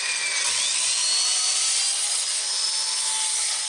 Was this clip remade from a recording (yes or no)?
no